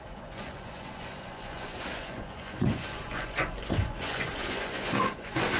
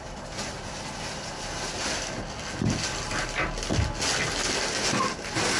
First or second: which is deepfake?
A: first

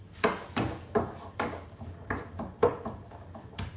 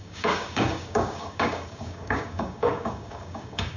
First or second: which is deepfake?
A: second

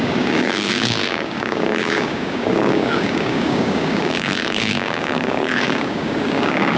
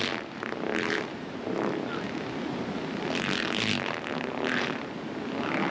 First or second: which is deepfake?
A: first